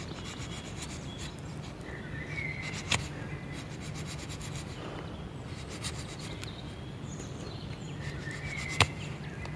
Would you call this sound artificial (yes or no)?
no